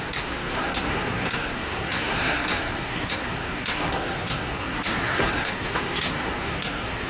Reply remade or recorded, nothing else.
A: remade